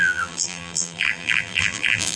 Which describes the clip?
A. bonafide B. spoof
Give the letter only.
B